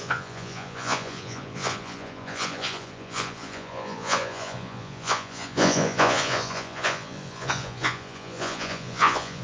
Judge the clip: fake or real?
fake